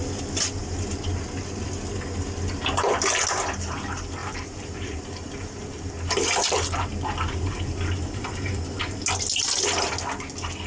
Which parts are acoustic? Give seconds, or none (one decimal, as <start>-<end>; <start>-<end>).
0.0-4.2; 8.8-10.7